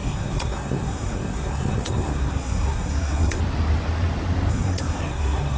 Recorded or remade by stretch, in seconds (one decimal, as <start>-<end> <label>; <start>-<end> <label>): 0.0-3.4 remade; 3.4-4.5 recorded; 4.5-5.6 remade